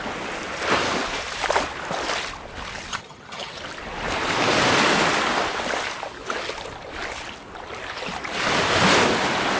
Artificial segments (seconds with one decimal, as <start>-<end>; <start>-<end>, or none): 2.9-3.6